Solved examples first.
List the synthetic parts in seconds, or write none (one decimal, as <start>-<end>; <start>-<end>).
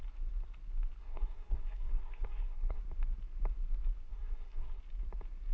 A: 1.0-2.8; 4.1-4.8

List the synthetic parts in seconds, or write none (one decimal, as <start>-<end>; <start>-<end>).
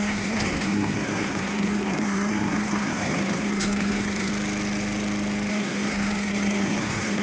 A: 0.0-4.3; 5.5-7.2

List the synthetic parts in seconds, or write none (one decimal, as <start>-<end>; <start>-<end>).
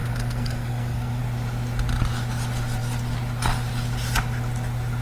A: 0.0-1.2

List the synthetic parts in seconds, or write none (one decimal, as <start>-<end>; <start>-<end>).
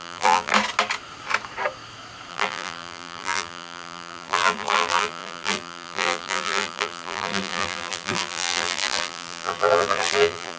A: 0.0-0.5; 2.3-10.6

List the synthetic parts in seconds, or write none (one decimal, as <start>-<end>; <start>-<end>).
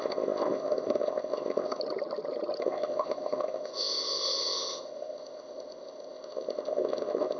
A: 0.0-1.8; 2.6-7.4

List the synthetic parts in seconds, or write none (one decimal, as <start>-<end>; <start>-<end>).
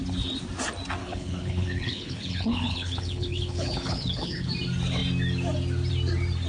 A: 1.0-4.5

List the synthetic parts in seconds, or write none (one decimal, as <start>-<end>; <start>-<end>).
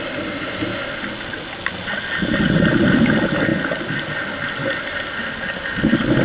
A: none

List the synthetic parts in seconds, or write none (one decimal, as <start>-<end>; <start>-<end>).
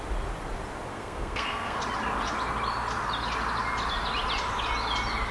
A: 0.9-1.8